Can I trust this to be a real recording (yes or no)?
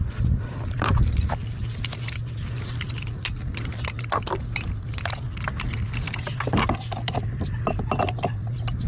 yes